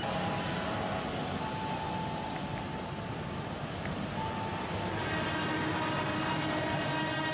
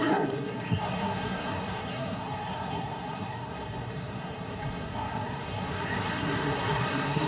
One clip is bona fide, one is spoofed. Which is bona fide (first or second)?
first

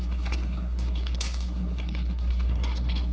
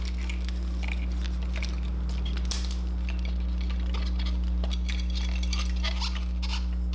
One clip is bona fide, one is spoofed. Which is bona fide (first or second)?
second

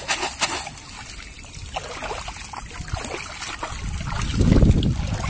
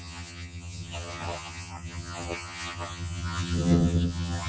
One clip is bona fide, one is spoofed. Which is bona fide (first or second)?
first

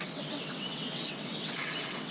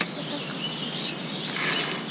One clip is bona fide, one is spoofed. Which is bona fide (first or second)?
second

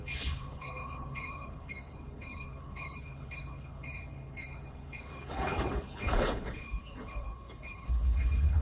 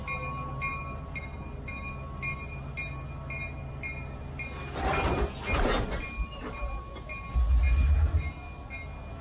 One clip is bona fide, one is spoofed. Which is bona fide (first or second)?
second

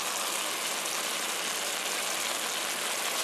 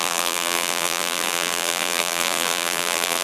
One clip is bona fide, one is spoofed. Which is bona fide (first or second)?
first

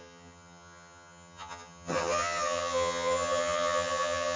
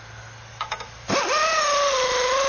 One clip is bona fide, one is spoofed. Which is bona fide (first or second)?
second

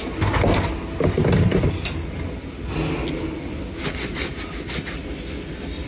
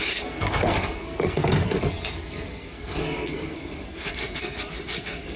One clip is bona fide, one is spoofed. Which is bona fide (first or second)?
first